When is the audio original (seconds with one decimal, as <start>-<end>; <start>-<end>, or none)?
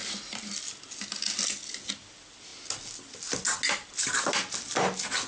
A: 0.0-5.3